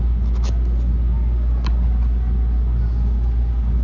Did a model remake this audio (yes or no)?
no